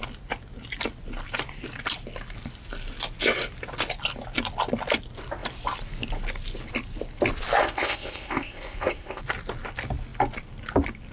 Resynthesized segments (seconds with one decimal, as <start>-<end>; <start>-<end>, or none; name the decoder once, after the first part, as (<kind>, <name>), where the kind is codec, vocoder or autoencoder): 7.6-9.2 (codec, ZipCodec)